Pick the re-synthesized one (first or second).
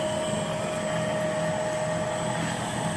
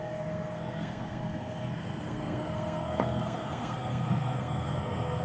second